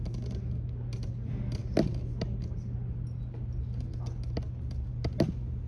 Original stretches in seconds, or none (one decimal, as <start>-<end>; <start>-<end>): 0.0-5.7